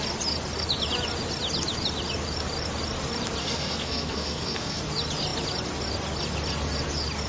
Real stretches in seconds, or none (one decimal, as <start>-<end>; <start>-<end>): 0.0-3.4; 4.8-7.3